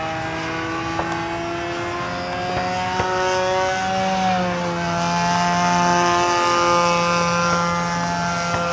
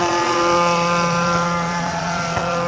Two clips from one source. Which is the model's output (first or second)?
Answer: second